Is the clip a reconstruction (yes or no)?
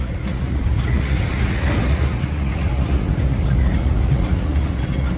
yes